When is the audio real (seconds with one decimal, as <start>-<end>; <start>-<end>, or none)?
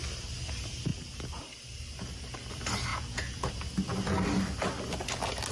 0.0-2.9; 3.5-5.5